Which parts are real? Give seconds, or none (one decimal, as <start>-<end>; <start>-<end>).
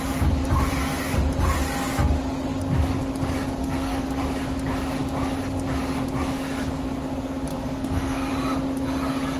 0.0-3.6; 4.2-7.5; 8.3-9.4